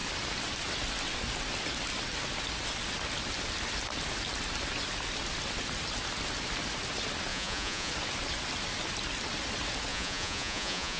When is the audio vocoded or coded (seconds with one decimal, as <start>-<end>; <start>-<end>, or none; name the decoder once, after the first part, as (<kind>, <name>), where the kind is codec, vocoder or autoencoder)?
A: 7.3-7.9 (vocoder, Vocos); 9.9-11.0